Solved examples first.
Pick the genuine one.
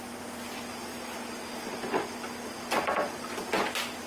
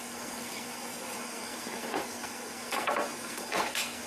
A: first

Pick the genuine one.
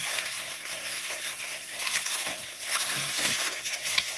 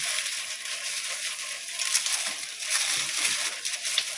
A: second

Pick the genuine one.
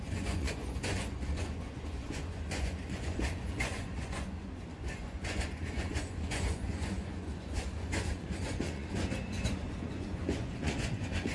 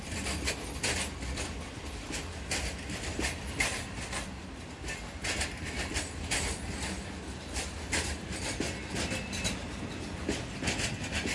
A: second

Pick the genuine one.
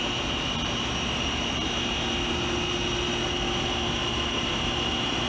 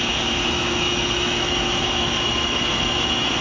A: first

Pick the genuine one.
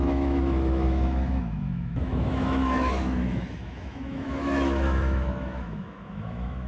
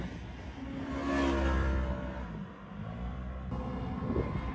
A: second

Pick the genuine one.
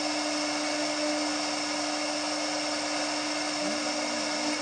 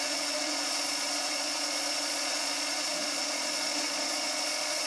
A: first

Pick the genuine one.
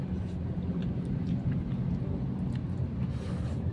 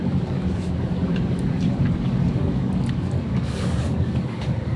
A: first